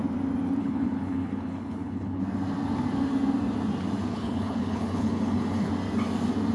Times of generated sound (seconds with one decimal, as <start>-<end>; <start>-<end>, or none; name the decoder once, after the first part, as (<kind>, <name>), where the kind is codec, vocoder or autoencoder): 0.6-2.2 (codec, HILCodec); 4.1-5.7